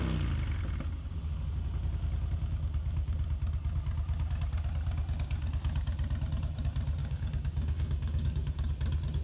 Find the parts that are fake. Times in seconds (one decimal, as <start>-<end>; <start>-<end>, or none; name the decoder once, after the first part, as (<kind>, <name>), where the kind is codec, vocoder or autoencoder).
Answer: 7.0-8.7 (codec, DAC)